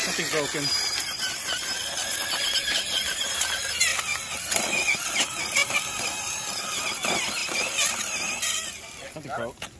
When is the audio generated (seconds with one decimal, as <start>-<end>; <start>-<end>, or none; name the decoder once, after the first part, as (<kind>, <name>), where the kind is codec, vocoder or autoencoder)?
none